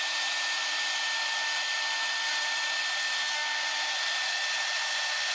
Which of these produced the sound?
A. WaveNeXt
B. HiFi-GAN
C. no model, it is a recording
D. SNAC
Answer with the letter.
C